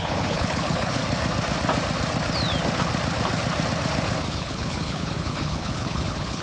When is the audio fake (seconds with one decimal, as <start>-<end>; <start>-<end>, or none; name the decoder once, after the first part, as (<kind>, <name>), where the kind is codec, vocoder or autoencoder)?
0.0-1.0 (codec, HILCodec); 4.3-6.4